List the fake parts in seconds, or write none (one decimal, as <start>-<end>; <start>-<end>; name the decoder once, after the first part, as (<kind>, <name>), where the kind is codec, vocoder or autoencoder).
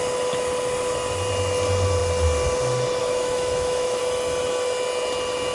3.0-4.0 (autoencoder, DAC-VAE)